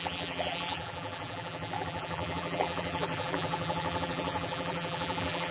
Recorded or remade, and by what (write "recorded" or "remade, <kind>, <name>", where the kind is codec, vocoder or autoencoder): remade, vocoder, BigVGAN v2